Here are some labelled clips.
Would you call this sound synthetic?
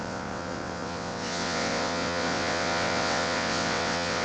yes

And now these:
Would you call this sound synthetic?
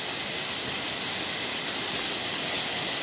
no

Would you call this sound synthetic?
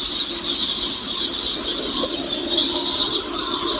no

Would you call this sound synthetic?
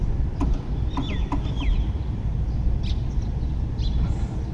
no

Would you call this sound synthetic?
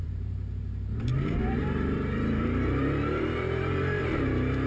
yes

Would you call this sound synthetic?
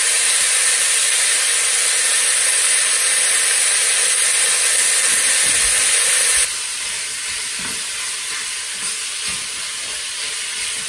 no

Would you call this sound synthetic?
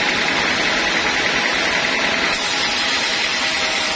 no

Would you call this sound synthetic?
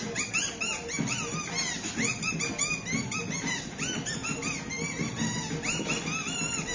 no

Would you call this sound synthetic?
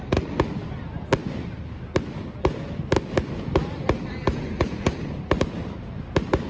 no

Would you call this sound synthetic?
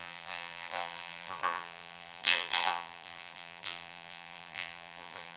yes